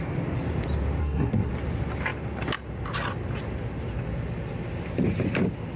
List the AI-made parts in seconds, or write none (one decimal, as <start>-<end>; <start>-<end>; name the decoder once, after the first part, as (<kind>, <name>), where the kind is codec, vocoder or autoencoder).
1.0-1.5 (codec, SNAC)

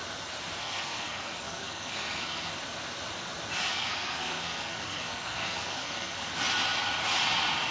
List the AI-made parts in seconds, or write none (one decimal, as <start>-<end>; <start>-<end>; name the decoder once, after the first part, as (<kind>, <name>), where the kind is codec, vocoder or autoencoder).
0.6-2.5 (codec, SNAC); 3.7-6.3

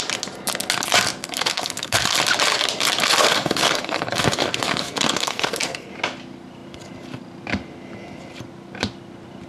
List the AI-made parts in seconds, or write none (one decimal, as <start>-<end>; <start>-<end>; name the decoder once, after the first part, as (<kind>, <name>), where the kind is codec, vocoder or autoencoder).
1.2-2.0 (codec, SNAC); 3.2-5.9

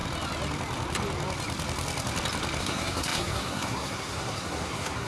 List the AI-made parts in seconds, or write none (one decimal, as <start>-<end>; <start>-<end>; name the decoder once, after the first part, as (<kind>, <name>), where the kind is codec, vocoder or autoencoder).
2.6-5.1 (codec, SNAC)

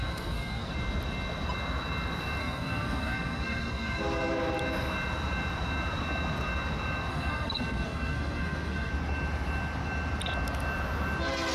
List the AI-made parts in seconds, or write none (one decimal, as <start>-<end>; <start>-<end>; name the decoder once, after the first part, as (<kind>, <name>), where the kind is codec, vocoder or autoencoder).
0.0-0.7 (codec, SNAC); 2.4-4.0; 7.1-8.9